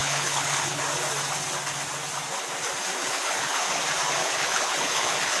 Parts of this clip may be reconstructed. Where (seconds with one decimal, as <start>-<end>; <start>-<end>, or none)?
0.0-0.8; 3.0-3.8; 4.2-5.4